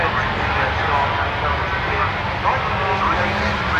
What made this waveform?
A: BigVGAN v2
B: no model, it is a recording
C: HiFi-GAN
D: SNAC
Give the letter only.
B